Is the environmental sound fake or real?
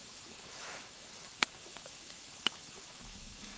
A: fake